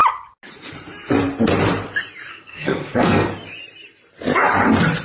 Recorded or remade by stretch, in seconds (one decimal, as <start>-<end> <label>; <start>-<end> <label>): 0.0-2.3 recorded; 2.3-3.3 remade; 3.3-5.0 recorded